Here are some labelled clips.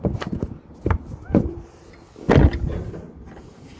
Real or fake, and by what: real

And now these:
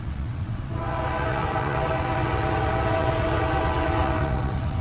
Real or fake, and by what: fake, vocoder, WaveNeXt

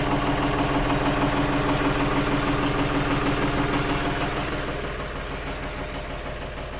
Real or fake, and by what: real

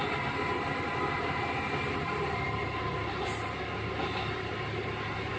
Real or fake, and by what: real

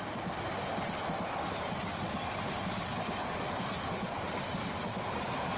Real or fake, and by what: real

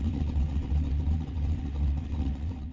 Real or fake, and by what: fake, vocoder, WaveNeXt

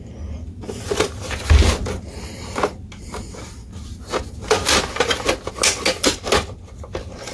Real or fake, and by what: real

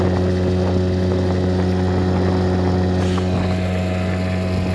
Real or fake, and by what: real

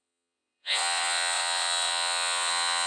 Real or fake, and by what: fake, vocoder, WaveNeXt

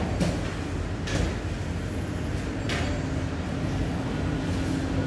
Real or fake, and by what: real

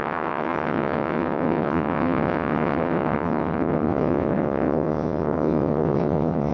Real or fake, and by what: fake, vocoder, WaveNeXt